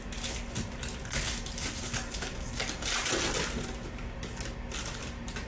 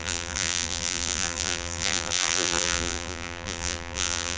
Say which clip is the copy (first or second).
second